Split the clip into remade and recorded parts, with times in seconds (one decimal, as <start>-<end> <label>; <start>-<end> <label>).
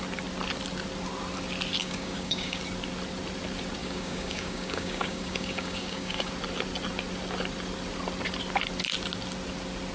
0.0-1.8 recorded; 1.8-2.6 remade; 2.6-3.8 recorded; 3.8-6.3 remade; 6.3-9.9 recorded